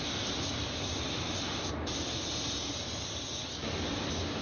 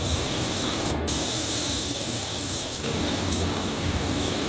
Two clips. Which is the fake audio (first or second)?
second